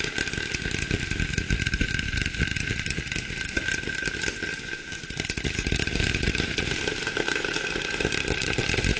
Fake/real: real